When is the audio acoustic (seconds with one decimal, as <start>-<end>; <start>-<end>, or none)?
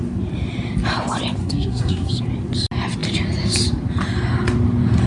0.0-1.4; 2.1-5.1